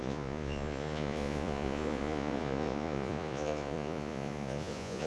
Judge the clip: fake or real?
fake